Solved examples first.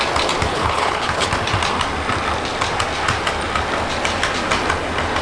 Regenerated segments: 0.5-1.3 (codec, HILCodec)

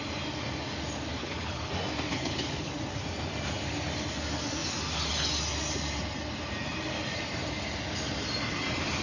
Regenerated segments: 1.2-1.7 (codec, HILCodec); 2.1-2.7

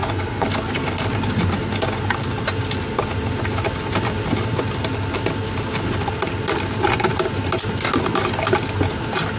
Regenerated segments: 0.0-0.5 (codec, HILCodec)

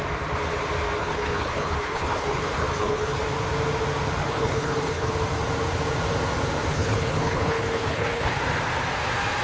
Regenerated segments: 1.0-3.2 (codec, HILCodec); 4.2-5.1; 6.7-8.4

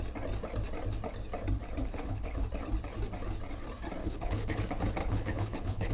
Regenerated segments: 1.8-2.4 (codec, HILCodec); 4.0-4.6; 5.0-5.9